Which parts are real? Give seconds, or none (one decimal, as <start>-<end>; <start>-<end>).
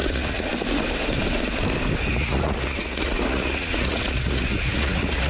0.5-2.1